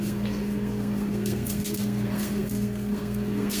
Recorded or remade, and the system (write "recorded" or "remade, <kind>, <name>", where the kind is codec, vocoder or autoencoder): remade, codec, SNAC